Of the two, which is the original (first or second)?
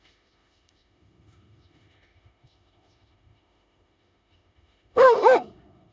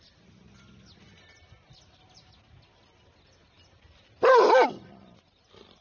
second